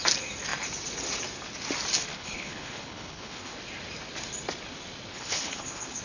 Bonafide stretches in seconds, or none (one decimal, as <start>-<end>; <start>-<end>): 0.0-2.1; 3.6-5.1